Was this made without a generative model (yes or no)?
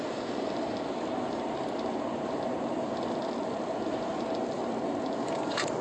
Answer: no